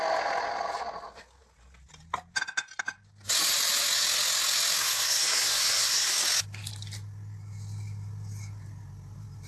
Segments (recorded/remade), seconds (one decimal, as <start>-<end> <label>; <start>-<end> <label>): 0.0-4.8 recorded; 4.8-6.1 remade; 6.1-9.5 recorded